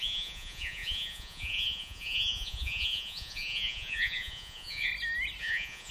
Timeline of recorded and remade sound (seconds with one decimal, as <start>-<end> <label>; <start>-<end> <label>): 0.0-4.9 remade; 4.9-5.4 recorded; 5.4-5.9 remade